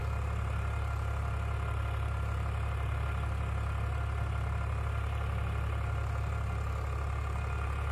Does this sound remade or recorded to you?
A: recorded